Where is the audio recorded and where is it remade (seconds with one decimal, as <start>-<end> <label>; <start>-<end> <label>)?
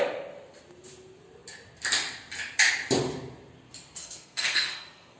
0.0-4.0 recorded; 4.0-5.2 remade